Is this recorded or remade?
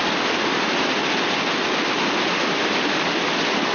recorded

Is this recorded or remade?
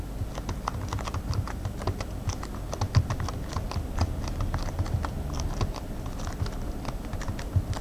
recorded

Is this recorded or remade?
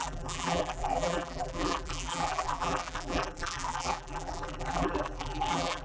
remade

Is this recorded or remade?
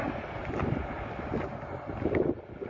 remade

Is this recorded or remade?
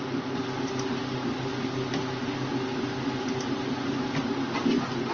recorded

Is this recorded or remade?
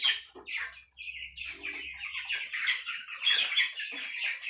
recorded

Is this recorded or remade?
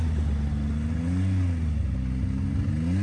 recorded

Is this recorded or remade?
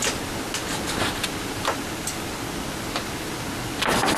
recorded